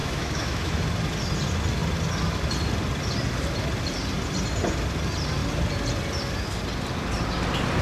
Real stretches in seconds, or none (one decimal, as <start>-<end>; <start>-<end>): 0.8-7.8

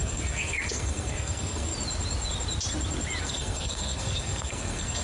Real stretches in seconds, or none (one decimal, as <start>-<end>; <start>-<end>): 1.7-3.2

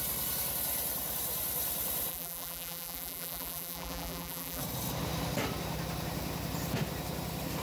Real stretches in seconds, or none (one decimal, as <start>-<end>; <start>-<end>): 0.0-2.1; 4.6-7.6